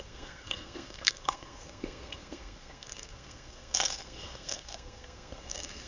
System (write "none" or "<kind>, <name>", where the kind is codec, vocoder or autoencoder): codec, SNAC